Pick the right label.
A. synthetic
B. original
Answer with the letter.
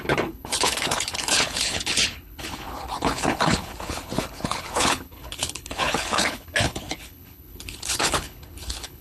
A